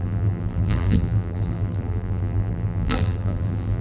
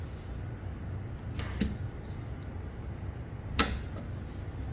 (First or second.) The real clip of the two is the second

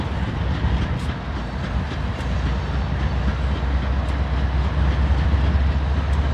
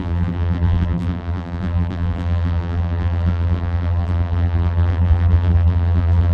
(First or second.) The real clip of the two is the first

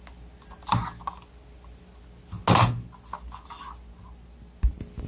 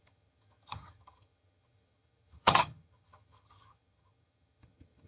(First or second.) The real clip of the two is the first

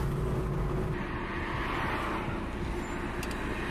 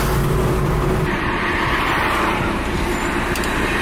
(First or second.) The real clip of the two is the first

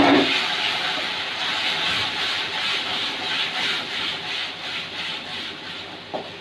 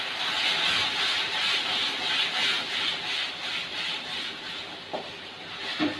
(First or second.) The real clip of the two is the second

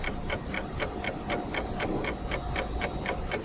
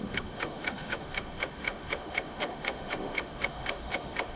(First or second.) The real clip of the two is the first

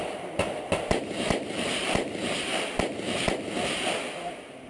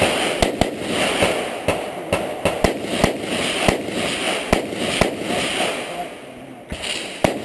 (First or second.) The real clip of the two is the second